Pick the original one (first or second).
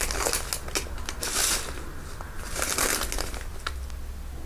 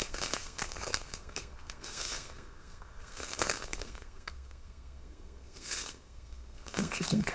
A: first